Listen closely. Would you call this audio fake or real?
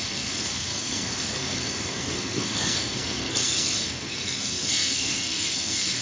fake